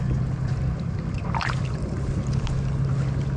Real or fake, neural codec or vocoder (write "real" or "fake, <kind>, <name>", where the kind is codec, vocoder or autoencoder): real